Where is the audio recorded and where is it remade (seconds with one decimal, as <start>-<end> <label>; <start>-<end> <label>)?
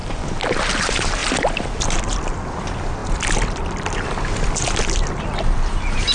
0.0-6.1 recorded